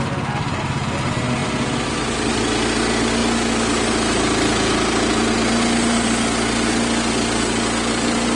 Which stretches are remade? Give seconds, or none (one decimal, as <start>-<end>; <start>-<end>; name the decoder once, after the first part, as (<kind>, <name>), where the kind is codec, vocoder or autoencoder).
none